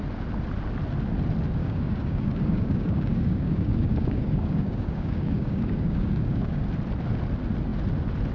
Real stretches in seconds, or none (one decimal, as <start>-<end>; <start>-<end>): 0.0-1.6; 6.6-8.3